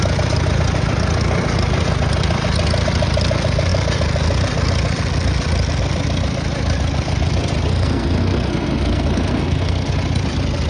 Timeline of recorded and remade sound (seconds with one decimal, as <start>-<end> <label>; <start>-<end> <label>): 0.0-7.7 recorded; 7.7-9.9 remade; 9.9-10.7 recorded